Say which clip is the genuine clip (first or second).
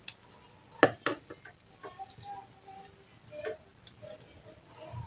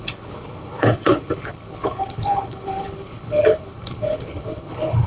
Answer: first